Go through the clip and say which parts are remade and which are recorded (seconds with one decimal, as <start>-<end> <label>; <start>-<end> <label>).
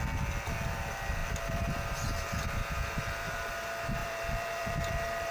0.0-1.2 recorded; 1.2-3.5 remade; 3.5-4.0 recorded; 4.0-5.3 remade